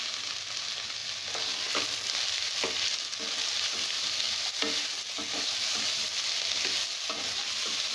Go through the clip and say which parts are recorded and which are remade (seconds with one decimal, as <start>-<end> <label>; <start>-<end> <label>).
0.0-7.9 recorded